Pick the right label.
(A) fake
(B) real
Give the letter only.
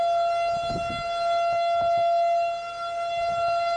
B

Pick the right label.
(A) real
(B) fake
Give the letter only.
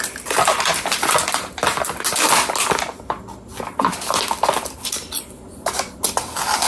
A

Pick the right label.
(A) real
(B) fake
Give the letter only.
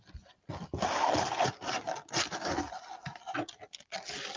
A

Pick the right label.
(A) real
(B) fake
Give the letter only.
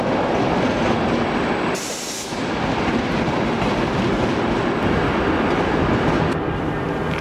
A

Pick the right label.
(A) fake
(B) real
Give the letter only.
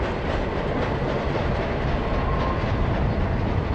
B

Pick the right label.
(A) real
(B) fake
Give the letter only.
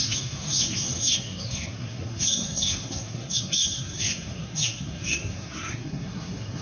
B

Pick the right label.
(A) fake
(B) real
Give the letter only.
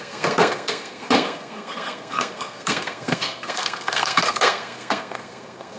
A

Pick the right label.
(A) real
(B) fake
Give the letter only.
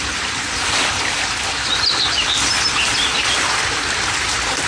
A